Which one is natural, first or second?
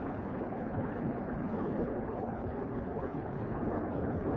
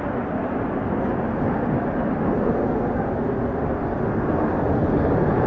second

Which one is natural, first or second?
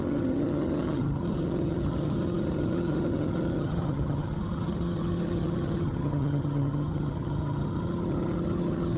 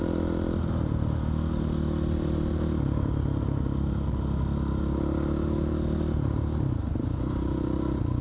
second